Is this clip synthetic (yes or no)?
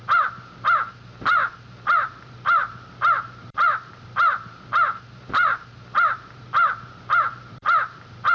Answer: yes